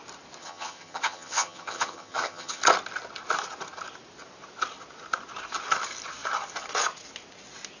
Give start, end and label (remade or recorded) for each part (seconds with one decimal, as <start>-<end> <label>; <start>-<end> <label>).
0.0-0.4 recorded; 0.4-2.6 remade; 2.6-7.8 recorded